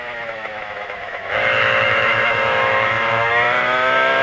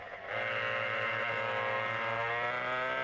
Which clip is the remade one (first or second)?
first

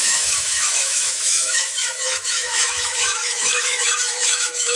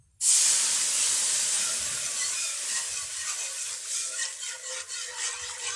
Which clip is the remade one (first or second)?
first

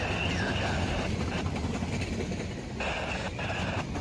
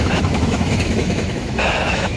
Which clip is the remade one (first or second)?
second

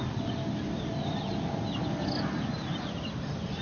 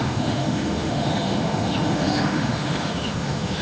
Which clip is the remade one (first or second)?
second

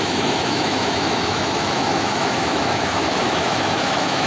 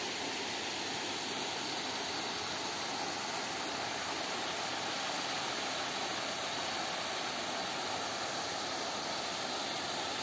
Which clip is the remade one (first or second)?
first